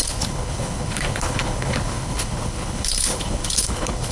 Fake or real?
fake